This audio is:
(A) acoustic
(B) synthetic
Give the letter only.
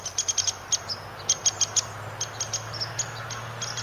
A